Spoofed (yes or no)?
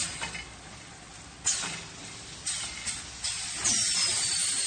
no